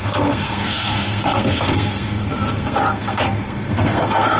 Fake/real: fake